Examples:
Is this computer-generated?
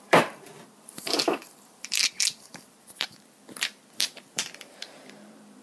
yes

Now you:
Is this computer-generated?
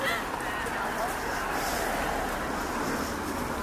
no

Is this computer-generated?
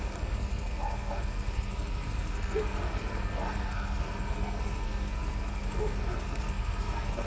yes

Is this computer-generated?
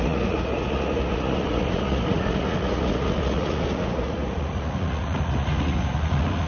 yes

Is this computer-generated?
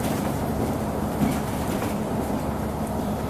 yes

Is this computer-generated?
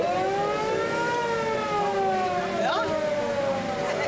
no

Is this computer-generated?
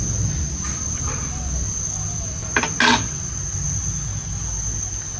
no